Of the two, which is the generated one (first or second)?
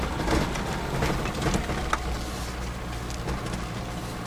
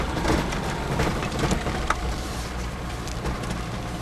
second